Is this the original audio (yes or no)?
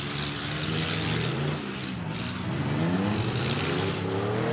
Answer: yes